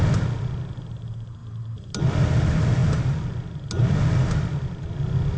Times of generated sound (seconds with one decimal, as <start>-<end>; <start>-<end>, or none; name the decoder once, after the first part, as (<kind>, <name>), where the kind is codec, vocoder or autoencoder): none